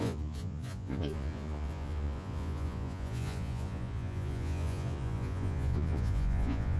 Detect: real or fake fake